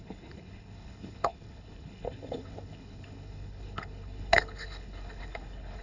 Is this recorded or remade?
remade